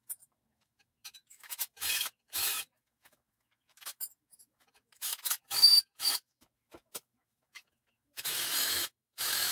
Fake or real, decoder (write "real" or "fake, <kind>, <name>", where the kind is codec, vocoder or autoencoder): fake, autoencoder, DAC-VAE